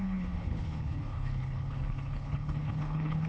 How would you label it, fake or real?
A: fake